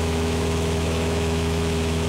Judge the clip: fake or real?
fake